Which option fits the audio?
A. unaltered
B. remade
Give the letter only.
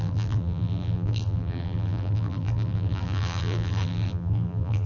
B